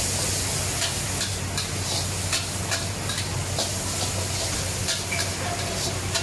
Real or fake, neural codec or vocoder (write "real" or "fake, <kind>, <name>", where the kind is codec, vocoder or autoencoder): real